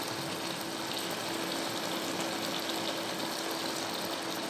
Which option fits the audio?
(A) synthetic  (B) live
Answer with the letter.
B